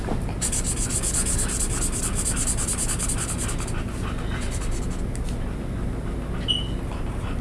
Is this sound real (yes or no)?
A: yes